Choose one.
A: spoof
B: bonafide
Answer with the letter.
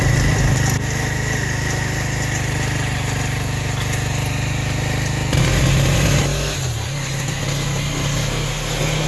B